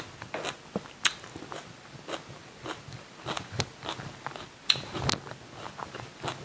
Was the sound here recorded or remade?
recorded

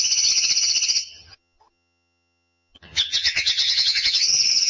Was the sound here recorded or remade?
remade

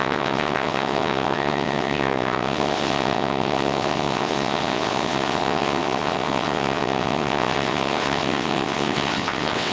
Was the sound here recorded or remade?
remade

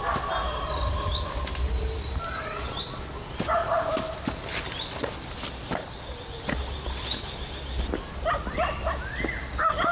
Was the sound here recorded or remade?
recorded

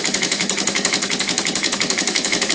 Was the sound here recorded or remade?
remade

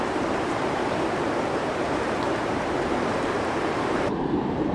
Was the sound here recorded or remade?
remade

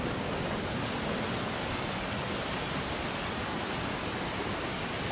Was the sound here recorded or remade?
recorded